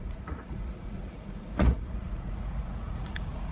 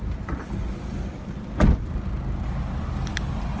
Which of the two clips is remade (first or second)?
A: first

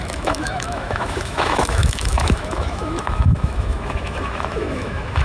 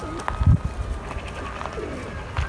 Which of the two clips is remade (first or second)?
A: first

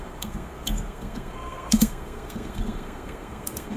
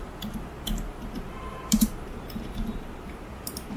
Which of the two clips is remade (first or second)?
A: first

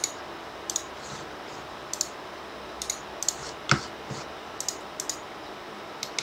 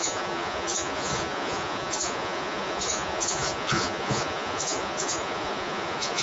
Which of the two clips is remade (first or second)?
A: second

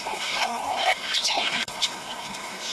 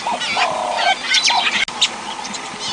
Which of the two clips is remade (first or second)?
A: first